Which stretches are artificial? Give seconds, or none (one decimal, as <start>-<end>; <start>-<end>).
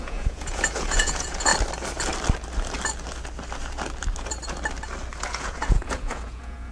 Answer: 0.0-1.5; 5.2-6.7